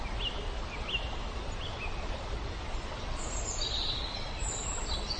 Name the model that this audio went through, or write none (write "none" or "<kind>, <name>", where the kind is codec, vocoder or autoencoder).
none